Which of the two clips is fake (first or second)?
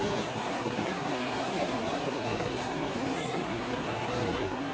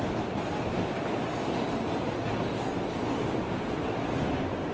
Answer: first